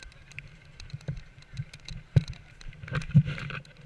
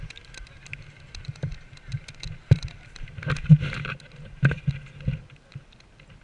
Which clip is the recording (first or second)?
second